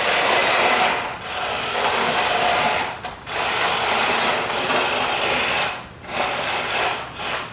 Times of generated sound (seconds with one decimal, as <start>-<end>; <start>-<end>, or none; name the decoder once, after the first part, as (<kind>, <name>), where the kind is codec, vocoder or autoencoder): none